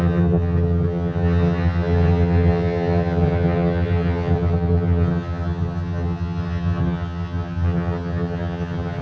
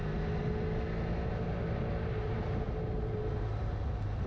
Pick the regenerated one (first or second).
first